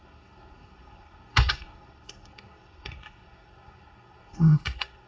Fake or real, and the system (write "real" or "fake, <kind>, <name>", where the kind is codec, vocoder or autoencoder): fake, codec, SNAC